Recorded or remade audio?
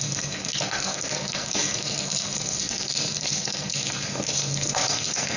remade